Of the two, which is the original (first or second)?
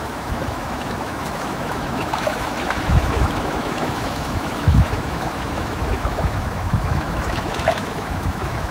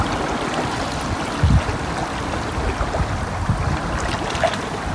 second